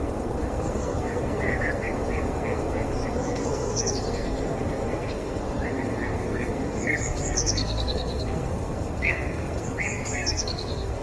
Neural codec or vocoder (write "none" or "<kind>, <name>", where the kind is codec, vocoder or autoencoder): codec, SNAC